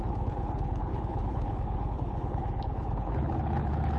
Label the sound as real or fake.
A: fake